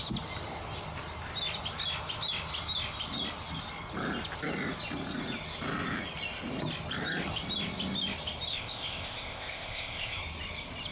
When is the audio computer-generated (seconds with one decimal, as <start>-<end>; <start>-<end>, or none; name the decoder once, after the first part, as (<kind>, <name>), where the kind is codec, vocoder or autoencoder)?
8.5-10.2 (codec, ZipCodec)